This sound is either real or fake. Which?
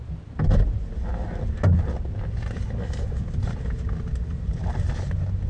real